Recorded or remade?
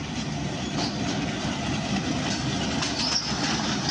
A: recorded